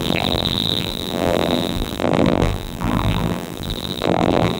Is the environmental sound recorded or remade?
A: remade